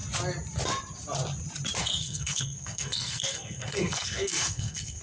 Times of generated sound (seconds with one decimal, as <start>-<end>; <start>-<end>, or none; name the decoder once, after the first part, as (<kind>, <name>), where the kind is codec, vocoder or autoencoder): 1.8-5.0 (codec, SNAC)